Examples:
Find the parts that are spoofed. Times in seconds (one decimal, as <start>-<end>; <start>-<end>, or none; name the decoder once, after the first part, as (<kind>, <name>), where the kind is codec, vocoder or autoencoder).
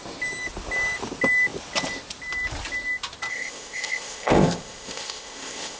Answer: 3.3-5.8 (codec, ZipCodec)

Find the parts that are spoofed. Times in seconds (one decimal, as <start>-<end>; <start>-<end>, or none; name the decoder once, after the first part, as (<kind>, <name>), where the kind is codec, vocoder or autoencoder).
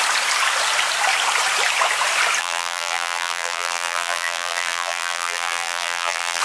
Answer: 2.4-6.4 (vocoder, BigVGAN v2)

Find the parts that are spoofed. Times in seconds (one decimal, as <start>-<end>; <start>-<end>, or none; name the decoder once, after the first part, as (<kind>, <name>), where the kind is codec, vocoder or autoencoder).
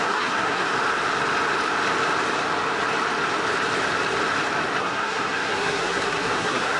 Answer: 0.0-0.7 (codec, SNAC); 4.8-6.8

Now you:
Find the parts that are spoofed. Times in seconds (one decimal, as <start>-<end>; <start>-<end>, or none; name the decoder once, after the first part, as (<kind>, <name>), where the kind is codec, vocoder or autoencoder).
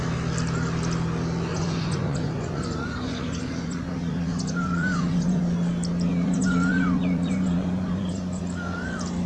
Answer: 1.5-5.4 (vocoder, Vocos); 6.1-8.4